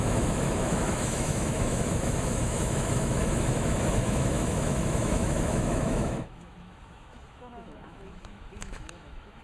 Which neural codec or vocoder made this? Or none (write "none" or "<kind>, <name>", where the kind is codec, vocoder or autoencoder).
autoencoder, DAC-VAE